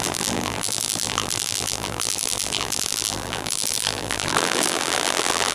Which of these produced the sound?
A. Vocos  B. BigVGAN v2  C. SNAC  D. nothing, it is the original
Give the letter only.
B